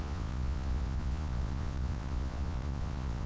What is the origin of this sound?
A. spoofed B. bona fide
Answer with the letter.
A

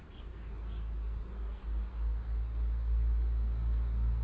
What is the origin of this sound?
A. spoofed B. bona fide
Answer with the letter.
A